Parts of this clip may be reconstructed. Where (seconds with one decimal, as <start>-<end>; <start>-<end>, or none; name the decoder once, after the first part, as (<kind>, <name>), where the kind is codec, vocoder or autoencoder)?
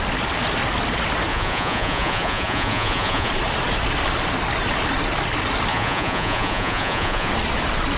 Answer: 1.3-3.3 (vocoder, Vocos); 5.7-7.3